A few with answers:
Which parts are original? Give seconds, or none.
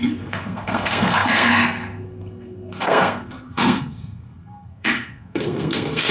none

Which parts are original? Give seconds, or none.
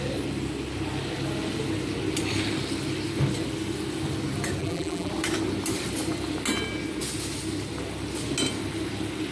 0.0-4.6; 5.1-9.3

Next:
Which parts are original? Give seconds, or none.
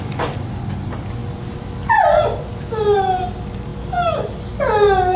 0.0-5.2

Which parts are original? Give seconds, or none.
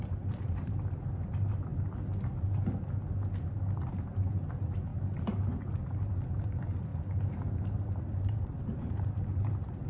1.7-3.9; 4.9-5.5; 6.9-7.7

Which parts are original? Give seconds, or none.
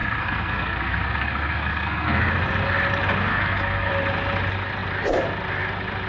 2.2-3.3; 3.9-6.1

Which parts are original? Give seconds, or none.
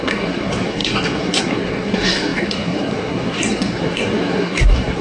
none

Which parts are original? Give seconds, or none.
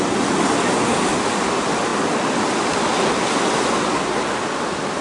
0.0-5.0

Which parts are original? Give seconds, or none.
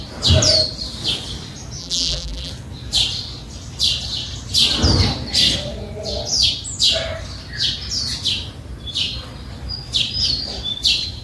0.0-1.8; 2.5-11.2